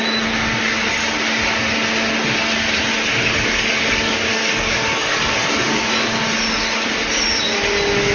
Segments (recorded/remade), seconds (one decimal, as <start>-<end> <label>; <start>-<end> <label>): 0.0-3.1 recorded; 3.1-6.2 remade; 6.2-8.1 recorded